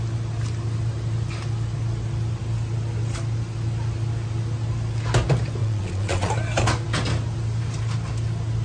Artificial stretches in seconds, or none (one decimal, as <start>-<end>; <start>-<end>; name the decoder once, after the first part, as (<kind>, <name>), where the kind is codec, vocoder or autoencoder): 5.6-6.3 (vocoder, Vocos)